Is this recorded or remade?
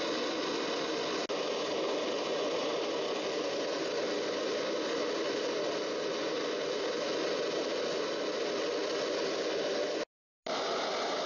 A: recorded